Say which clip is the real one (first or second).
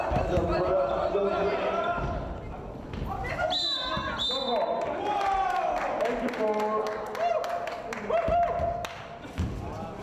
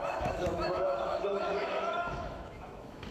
first